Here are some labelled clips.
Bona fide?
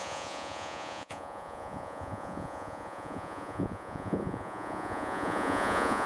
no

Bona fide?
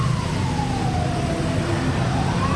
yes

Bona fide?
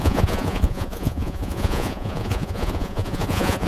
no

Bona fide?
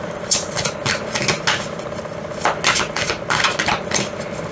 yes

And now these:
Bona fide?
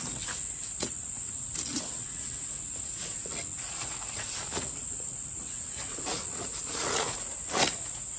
no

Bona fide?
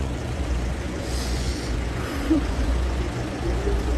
no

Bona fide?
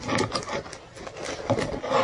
yes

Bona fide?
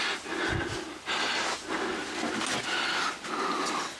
yes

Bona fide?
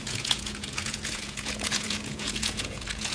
no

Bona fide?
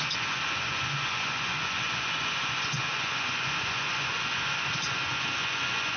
no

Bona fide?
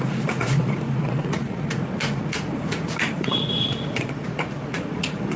no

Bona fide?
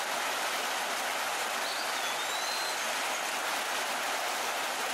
yes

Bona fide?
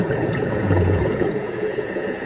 no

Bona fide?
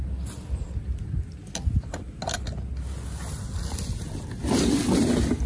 yes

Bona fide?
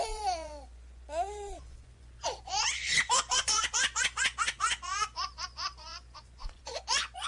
no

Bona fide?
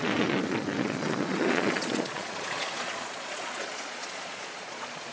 no